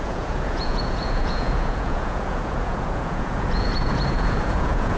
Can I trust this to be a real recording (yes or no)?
no